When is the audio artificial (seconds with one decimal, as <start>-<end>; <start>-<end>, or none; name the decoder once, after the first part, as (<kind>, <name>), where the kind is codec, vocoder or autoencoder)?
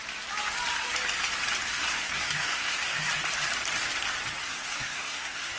1.7-3.1 (codec, SNAC); 4.4-5.6